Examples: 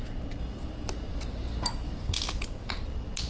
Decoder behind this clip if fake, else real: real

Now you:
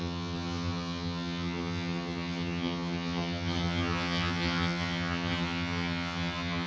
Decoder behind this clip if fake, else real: fake, vocoder, HiFi-GAN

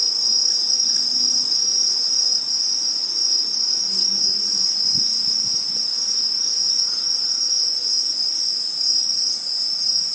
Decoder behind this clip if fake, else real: real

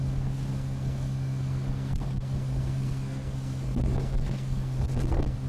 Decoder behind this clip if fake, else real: fake, codec, SNAC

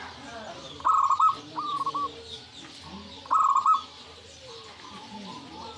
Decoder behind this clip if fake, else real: real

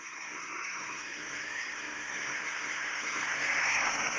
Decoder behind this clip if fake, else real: fake, codec, SNAC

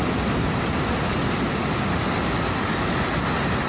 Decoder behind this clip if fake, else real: real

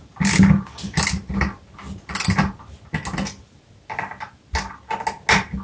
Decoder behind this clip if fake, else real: real